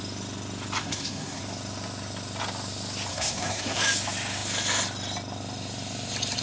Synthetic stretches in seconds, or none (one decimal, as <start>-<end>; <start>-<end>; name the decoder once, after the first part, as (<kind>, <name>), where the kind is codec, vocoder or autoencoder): 0.8-1.4 (codec, SNAC); 3.1-3.8